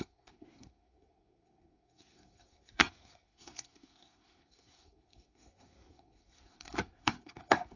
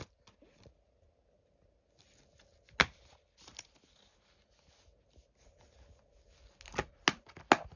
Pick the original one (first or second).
second